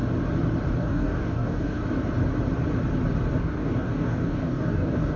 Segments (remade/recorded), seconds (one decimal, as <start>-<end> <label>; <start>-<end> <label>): 0.0-0.8 recorded; 0.8-1.8 remade; 1.8-3.4 recorded; 3.4-5.2 remade